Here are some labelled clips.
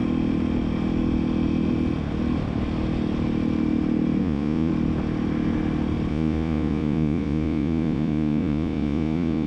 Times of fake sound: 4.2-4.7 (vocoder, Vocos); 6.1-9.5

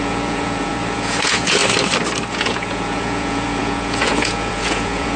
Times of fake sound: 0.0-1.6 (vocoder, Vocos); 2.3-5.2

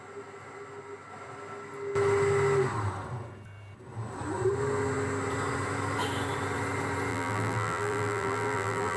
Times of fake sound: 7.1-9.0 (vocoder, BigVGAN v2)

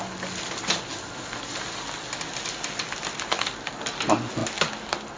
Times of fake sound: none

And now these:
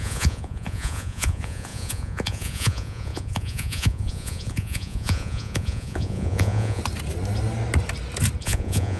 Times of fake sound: 0.0-6.8 (vocoder, Vocos); 8.4-9.0

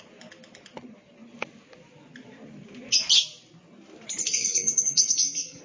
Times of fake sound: 4.2-5.6 (codec, SNAC)

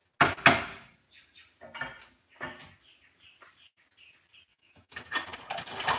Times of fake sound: 4.5-5.1 (autoencoder, DAC-VAE)

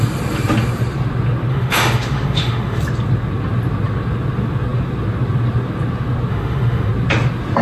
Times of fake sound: 1.5-2.8 (autoencoder, DAC-VAE); 6.3-6.9